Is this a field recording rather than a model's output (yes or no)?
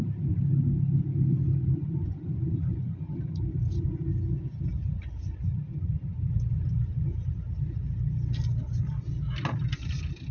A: yes